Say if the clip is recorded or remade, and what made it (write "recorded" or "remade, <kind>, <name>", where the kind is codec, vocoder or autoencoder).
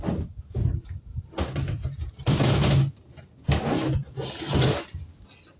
recorded